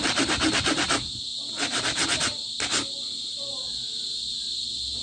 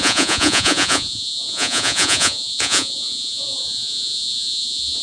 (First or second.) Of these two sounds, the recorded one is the first